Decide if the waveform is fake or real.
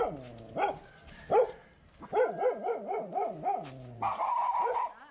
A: real